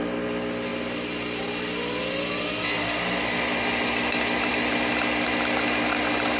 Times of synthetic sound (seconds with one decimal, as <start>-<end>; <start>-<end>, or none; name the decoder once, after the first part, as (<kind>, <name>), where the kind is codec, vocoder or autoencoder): none